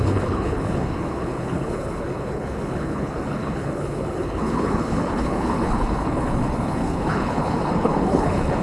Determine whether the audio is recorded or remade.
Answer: remade